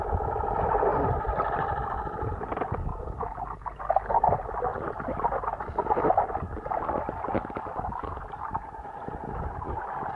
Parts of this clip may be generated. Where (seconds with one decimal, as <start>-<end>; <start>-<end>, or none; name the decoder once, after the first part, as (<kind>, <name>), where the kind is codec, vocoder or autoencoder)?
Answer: 0.9-1.8 (vocoder, BigVGAN v2); 4.7-6.4